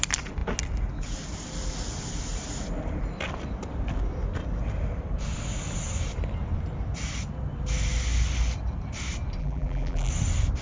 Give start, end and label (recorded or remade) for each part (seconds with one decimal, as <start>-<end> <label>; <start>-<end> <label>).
0.0-9.4 recorded; 9.4-10.1 remade; 10.1-10.6 recorded